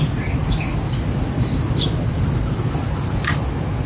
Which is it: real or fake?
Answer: real